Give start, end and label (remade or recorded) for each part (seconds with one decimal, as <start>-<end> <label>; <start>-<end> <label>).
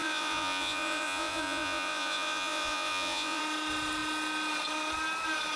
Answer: 0.0-3.4 remade; 3.4-5.6 recorded